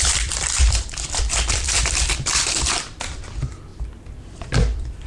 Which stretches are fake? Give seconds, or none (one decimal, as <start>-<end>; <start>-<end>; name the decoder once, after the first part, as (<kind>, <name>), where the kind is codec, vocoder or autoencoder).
0.0-3.7 (vocoder, BigVGAN v2); 4.3-5.1